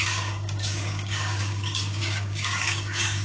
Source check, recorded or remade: remade